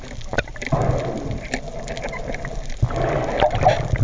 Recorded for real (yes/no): yes